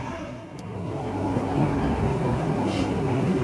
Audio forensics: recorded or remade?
remade